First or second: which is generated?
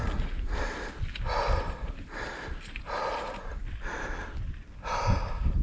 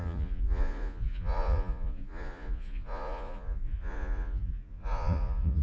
second